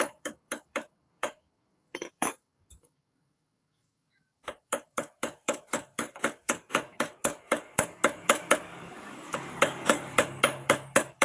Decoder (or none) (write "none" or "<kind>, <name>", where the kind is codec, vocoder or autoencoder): codec, DAC